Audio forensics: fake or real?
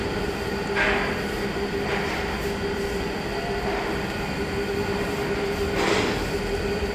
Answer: real